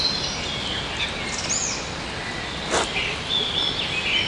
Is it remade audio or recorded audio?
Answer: recorded